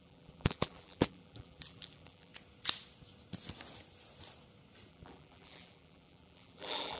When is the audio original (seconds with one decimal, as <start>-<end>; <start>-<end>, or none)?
2.3-4.9